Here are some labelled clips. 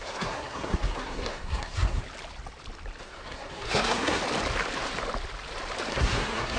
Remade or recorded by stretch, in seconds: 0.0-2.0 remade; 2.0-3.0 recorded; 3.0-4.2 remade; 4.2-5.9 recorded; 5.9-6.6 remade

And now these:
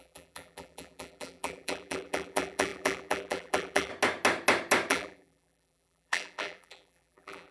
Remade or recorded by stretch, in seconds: 0.0-3.9 remade; 3.9-4.9 recorded; 4.9-7.5 remade